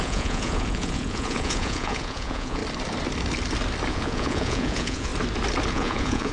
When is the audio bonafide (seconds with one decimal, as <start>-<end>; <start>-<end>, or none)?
2.6-3.9; 5.1-5.7